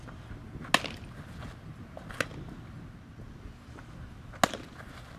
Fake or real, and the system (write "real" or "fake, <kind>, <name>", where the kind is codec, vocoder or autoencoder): real